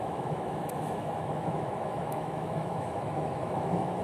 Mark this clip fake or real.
fake